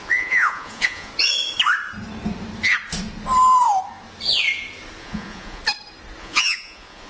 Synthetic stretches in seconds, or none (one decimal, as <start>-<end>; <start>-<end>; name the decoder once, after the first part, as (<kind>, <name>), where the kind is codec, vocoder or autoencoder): 0.0-1.1 (vocoder, Vocos); 5.0-5.6; 6.2-7.1